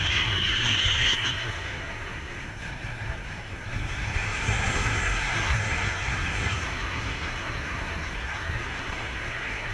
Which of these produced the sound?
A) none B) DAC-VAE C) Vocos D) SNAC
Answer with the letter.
D